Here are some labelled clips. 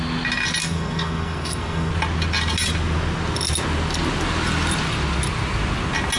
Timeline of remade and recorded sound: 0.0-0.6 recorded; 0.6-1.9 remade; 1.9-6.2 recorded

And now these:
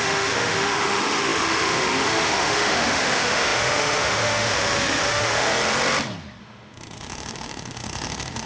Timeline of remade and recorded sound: 0.0-5.5 remade; 5.5-6.4 recorded; 6.4-8.5 remade

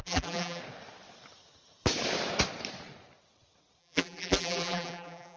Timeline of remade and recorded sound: 0.0-0.6 remade; 0.6-3.8 recorded; 3.8-5.4 remade

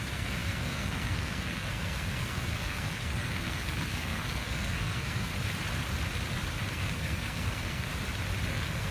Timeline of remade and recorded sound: 0.0-5.3 remade; 5.3-6.7 recorded; 6.7-7.9 remade; 7.9-8.5 recorded; 8.5-8.9 remade

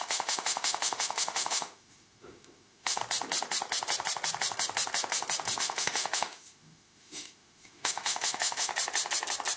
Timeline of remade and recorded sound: 0.0-3.0 remade; 3.0-5.6 recorded; 5.6-8.7 remade; 8.7-9.6 recorded

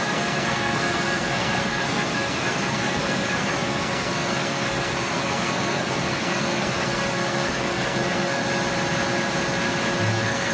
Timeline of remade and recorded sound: 0.0-8.4 remade; 8.4-10.1 recorded; 10.1-10.5 remade

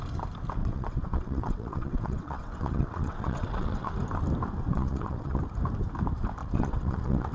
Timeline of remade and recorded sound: 0.0-0.6 recorded; 0.6-3.9 remade; 3.9-4.7 recorded; 4.7-5.4 remade; 5.4-6.4 recorded; 6.4-7.3 remade

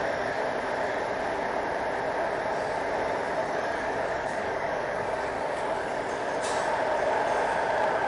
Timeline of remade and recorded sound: 0.0-3.4 recorded; 3.4-6.0 remade; 6.0-8.1 recorded